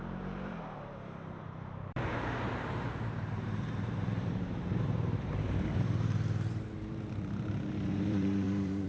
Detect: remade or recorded remade